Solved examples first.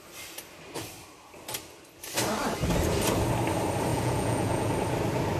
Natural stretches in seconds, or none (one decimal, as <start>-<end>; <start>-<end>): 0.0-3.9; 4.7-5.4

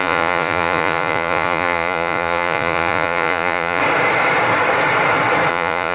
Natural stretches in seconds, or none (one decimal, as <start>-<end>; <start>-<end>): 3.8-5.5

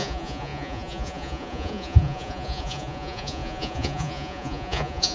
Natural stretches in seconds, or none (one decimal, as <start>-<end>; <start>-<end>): none

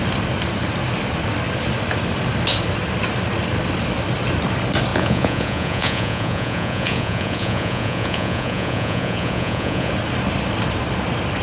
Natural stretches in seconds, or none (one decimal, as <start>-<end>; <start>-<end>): 0.0-4.9; 9.9-11.4

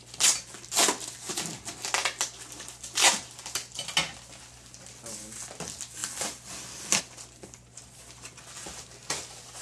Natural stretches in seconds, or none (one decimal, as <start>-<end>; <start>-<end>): 0.0-9.6